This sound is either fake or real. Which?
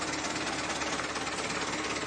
real